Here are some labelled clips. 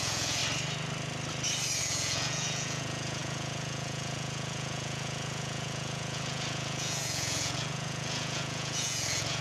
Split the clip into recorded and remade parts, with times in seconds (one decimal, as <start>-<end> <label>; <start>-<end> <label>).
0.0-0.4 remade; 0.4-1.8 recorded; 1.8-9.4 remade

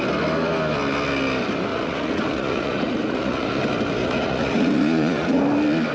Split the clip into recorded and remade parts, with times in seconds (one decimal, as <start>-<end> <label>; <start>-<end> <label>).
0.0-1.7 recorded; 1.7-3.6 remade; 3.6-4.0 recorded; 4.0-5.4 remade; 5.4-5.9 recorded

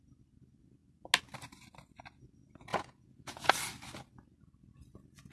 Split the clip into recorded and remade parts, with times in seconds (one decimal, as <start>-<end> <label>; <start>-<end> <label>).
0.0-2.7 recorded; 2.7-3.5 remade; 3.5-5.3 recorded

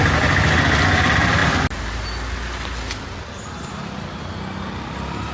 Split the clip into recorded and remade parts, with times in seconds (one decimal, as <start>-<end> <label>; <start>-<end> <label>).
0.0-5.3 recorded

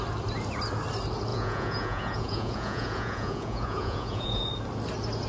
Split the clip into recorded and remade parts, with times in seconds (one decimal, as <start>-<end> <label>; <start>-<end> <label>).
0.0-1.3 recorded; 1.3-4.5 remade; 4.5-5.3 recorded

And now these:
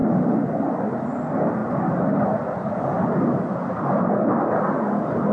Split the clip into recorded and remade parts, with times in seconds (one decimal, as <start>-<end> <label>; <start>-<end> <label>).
0.0-5.3 recorded